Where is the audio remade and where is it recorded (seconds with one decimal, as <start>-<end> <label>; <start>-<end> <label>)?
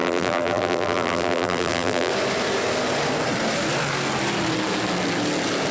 0.0-2.1 remade; 2.1-5.7 recorded